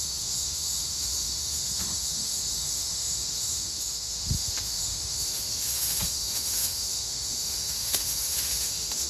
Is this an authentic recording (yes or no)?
no